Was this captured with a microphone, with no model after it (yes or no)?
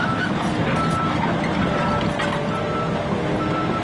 yes